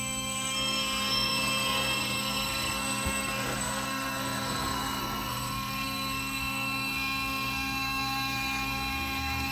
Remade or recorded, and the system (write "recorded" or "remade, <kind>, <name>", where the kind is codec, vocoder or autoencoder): remade, codec, SNAC